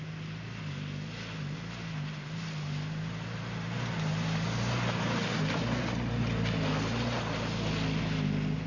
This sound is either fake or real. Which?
real